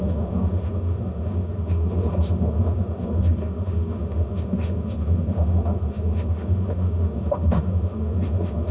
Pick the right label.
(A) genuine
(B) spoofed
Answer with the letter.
B